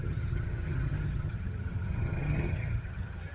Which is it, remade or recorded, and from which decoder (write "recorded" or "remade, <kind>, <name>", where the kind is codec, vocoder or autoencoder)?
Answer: remade, vocoder, HiFi-GAN